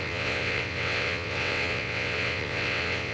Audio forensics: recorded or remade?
remade